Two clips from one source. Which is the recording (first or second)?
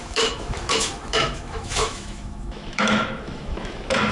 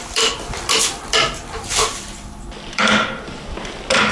second